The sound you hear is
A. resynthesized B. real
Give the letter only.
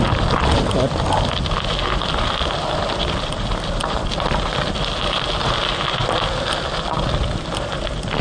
B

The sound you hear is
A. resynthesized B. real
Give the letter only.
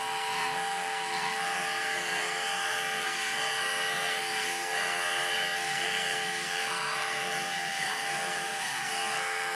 A